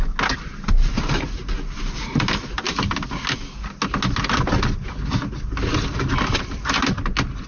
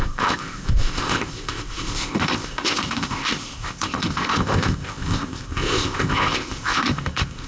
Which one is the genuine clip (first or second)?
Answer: first